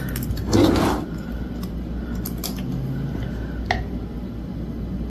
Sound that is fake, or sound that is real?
real